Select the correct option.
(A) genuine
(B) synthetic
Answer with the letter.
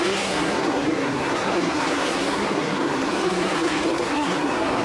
B